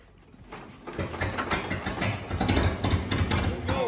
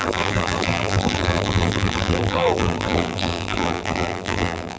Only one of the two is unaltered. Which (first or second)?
first